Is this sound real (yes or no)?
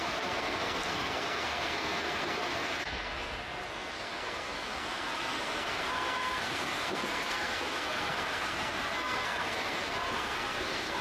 no